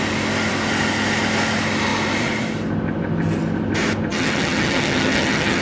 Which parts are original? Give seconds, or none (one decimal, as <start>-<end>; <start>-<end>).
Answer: 0.0-4.1